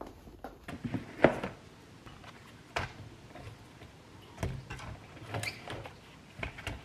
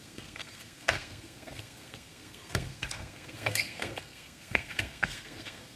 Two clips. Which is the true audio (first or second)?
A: first